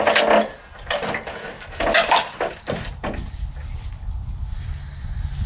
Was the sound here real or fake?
real